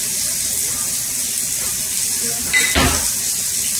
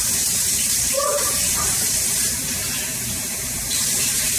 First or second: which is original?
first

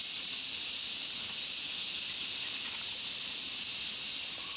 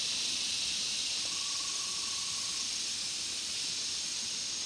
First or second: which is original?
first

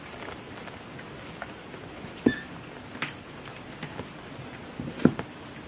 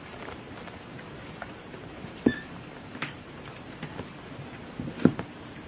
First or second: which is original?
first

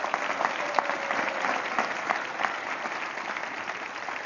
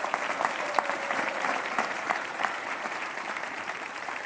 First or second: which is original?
first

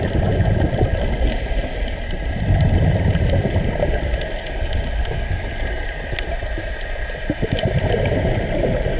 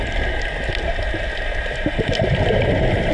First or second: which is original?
second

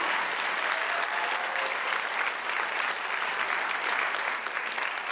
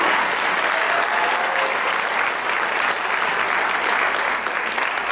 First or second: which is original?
second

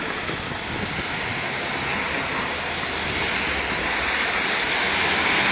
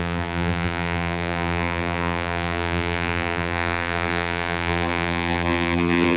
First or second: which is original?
first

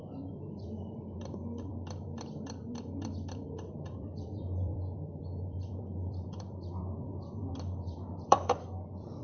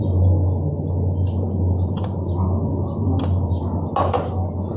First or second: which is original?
second